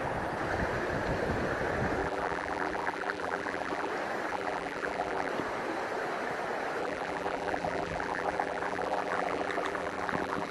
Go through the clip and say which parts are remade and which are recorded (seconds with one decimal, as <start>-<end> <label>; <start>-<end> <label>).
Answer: 0.0-2.0 recorded; 2.0-3.9 remade; 3.9-4.3 recorded; 4.3-5.3 remade; 5.3-6.8 recorded; 6.8-10.5 remade